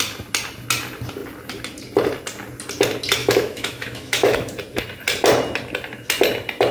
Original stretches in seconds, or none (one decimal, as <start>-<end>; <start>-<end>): 0.0-3.2; 4.5-6.7